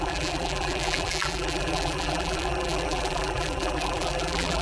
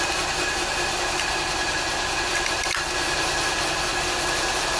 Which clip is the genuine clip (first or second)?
second